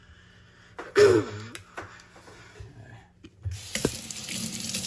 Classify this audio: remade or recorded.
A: recorded